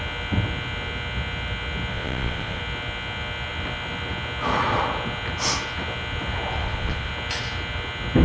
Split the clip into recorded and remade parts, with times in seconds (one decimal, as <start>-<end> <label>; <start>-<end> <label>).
0.0-1.9 recorded; 1.9-2.6 remade; 2.6-6.6 recorded; 6.6-7.1 remade; 7.1-8.2 recorded